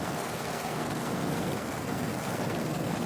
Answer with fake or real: fake